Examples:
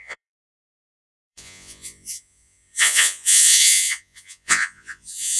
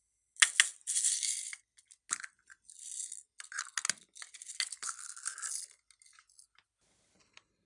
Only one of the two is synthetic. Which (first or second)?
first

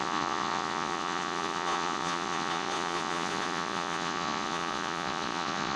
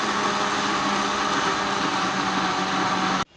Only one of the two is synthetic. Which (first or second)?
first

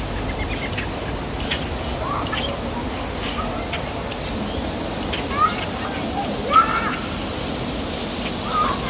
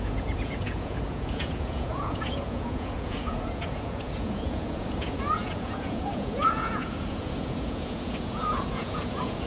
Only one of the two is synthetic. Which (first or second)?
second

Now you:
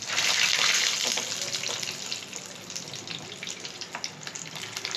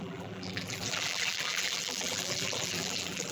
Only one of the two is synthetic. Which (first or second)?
second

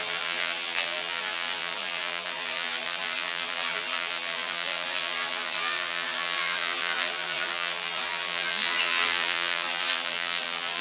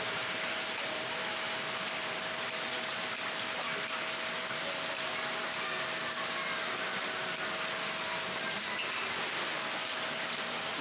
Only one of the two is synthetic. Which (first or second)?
first